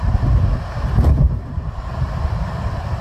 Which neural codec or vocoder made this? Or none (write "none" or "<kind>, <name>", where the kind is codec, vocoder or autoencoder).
vocoder, BigVGAN v2